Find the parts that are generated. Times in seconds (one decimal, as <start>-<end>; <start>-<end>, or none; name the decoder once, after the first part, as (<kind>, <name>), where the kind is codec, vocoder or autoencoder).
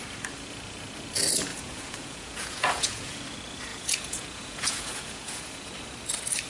1.5-3.2 (vocoder, Vocos); 3.7-5.7